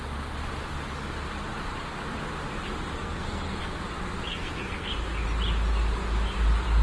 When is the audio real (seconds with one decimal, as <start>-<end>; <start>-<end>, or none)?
0.0-3.0; 3.8-4.3; 4.9-6.8